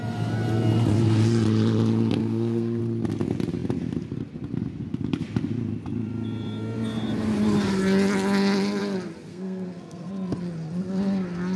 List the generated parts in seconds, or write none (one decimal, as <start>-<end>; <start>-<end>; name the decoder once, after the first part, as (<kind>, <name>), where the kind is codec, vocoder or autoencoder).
2.2-2.8 (codec, SNAC); 9.3-10.1